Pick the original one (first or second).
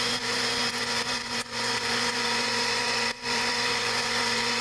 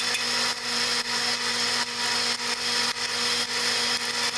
second